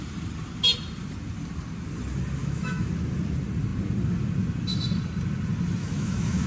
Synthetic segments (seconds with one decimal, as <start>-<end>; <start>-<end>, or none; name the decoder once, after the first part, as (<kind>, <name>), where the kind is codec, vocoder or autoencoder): 2.4-2.9 (autoencoder, DAC-VAE); 5.8-6.5